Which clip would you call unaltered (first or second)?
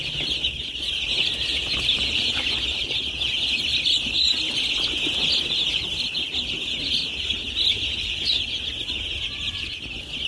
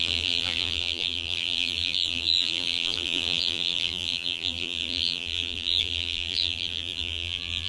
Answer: first